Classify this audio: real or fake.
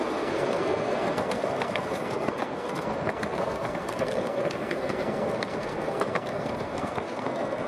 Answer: fake